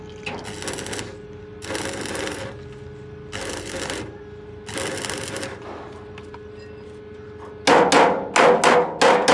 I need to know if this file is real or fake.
real